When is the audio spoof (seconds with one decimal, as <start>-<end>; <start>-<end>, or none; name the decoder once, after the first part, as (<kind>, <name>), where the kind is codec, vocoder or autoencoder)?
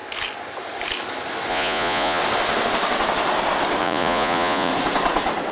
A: 1.5-2.2 (vocoder, Vocos); 3.8-4.7